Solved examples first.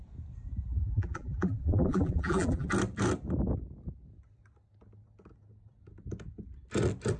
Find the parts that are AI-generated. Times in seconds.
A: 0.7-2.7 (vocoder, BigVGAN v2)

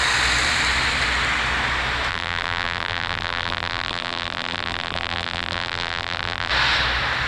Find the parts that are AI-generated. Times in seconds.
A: 2.1-6.5 (vocoder, BigVGAN v2)

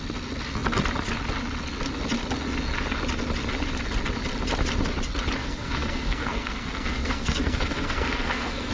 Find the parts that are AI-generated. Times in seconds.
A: 5.4-8.7 (codec, SNAC)